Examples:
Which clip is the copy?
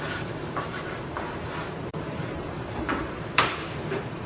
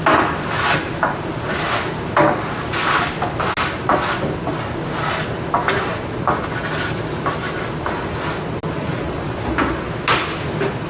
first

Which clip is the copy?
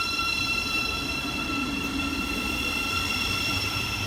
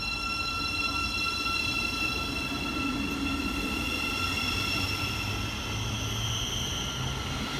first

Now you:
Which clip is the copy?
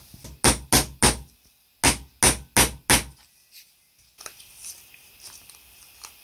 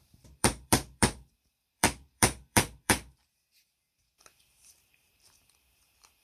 second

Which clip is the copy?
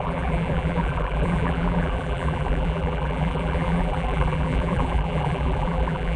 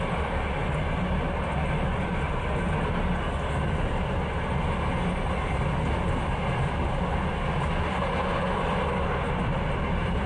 first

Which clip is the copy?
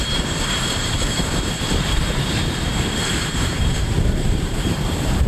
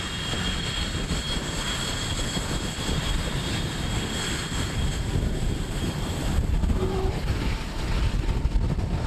first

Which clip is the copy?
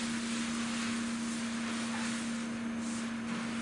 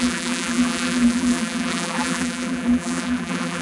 second